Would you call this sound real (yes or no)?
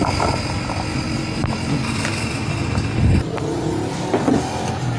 yes